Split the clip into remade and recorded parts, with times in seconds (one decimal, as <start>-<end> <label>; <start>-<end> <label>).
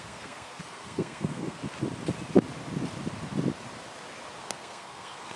0.0-1.6 remade; 1.6-4.4 recorded; 4.4-5.4 remade